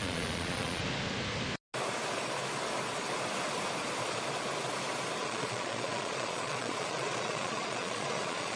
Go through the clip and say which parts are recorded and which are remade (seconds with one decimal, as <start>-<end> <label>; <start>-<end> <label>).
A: 0.0-0.8 remade; 0.8-5.2 recorded; 5.2-8.6 remade